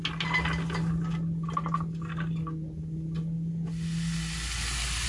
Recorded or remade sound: recorded